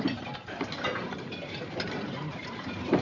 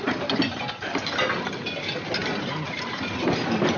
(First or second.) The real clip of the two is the second